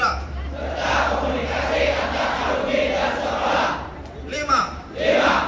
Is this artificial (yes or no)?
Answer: yes